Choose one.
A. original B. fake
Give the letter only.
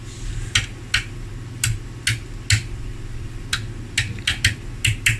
A